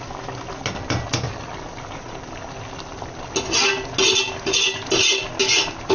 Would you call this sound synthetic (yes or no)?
no